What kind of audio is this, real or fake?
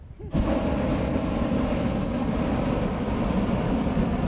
real